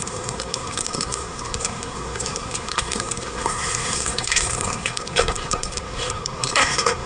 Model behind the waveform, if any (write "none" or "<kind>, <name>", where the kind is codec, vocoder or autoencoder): codec, SNAC